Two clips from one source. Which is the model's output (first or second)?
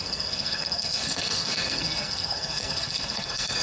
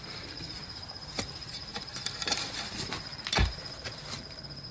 first